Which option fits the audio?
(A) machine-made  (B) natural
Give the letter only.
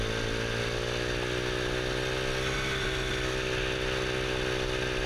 B